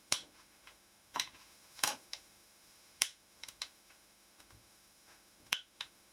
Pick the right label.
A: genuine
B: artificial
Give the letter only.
B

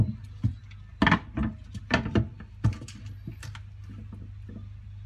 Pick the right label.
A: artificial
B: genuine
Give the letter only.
B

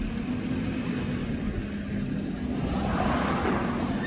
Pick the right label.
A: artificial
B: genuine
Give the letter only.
B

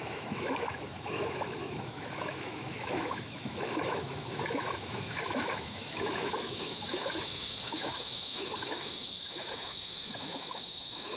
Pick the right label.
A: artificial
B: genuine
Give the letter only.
A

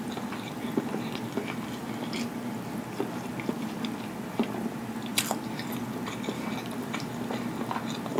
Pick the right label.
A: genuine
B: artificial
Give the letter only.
A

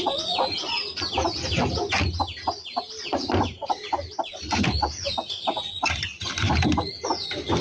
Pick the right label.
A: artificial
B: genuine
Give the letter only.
B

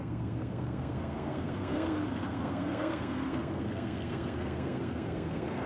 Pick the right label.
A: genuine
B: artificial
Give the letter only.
B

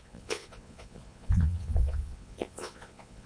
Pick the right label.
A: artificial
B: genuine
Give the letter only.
A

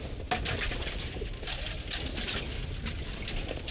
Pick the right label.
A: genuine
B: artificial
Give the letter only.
A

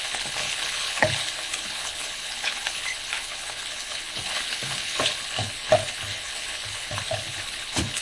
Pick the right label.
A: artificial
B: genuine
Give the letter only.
A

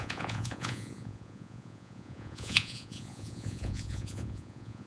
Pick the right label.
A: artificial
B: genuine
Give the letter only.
A